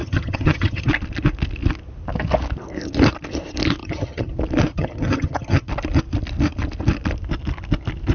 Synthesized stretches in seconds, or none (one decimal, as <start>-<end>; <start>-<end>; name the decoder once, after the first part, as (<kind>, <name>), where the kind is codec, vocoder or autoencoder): 0.0-0.9 (vocoder, HiFi-GAN); 3.8-4.3; 4.7-5.7